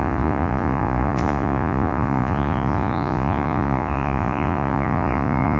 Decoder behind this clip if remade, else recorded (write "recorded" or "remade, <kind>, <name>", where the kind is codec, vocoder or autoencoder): remade, vocoder, Vocos